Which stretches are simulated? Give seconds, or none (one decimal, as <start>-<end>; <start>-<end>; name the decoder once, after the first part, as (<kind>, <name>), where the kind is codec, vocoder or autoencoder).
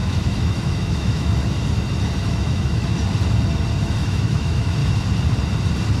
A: 0.0-1.4 (autoencoder, DAC-VAE); 2.3-2.9; 3.9-4.8